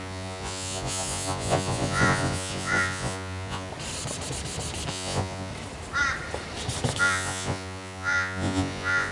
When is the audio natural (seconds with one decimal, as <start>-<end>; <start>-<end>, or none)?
3.7-4.9; 5.5-7.0